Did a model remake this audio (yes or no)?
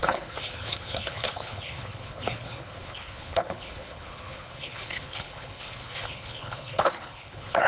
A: yes